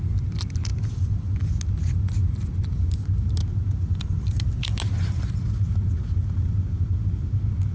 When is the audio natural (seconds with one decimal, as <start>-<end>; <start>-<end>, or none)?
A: 0.0-7.7